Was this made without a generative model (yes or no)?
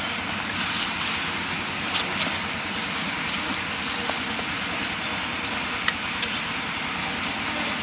yes